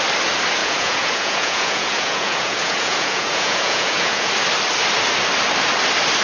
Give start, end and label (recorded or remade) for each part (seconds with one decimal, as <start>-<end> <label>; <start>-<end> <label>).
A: 0.0-0.6 recorded; 0.6-4.3 remade; 4.3-6.2 recorded